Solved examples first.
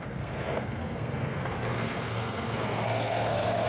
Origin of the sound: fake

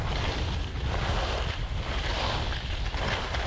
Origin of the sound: real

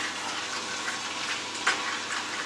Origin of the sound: real